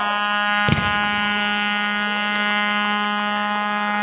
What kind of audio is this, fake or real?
real